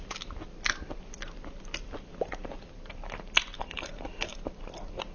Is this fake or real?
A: real